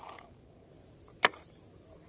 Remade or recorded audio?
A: recorded